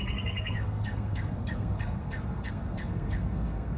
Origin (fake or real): fake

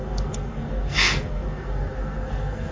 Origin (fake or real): fake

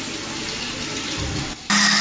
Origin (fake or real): real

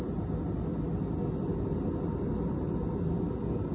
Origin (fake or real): real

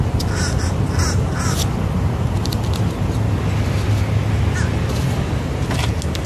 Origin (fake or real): real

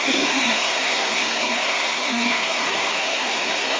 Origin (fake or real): fake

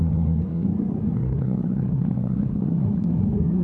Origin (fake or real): fake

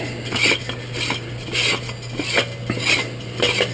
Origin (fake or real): real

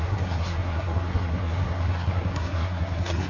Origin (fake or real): fake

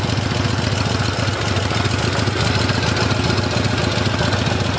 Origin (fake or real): real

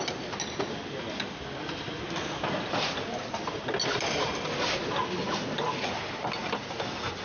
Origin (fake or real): real